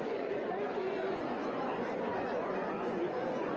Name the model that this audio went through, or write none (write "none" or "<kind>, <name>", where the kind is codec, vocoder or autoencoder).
vocoder, Vocos